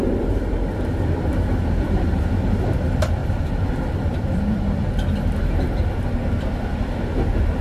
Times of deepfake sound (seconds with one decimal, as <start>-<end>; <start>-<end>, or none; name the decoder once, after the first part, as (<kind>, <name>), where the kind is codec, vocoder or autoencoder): 3.2-4.6 (vocoder, BigVGAN v2)